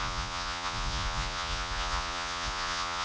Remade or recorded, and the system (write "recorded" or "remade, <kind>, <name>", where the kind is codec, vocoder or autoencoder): remade, vocoder, Vocos